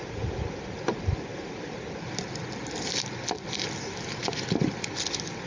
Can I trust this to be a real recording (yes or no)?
yes